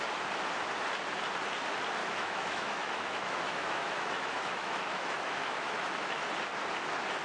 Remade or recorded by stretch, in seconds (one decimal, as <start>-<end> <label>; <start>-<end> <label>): 0.0-2.0 recorded; 2.0-6.3 remade; 6.3-7.2 recorded